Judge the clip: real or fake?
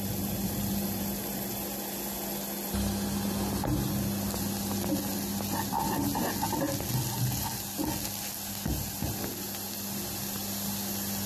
real